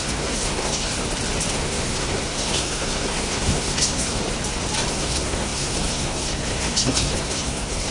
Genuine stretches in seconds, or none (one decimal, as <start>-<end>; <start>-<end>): 0.9-1.5; 4.2-4.9